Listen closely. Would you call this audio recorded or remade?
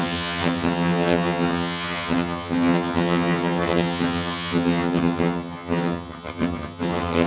remade